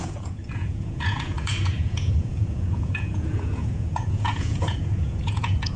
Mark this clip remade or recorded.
remade